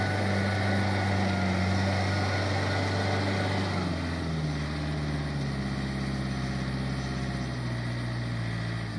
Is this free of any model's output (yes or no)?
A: yes